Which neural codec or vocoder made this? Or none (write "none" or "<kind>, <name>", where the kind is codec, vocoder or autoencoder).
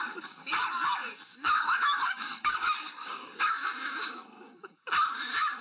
codec, DAC